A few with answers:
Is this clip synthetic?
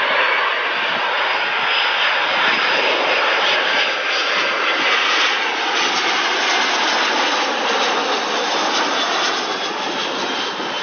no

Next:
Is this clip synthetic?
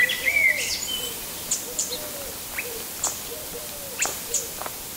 yes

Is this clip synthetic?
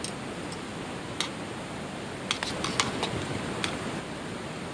no